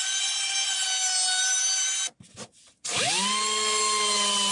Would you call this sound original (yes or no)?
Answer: yes